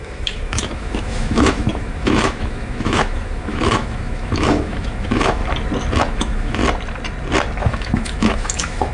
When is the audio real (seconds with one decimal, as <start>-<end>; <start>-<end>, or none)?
5.4-6.0; 6.6-7.6